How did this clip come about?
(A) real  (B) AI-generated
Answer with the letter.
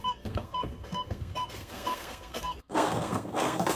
B